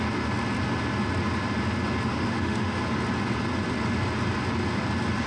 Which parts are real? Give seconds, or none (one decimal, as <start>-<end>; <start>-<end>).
0.0-2.1; 2.8-5.3